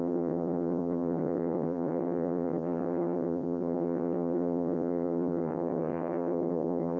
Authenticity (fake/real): fake